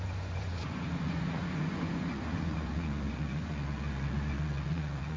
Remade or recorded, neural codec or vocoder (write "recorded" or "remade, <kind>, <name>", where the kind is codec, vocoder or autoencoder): remade, vocoder, Vocos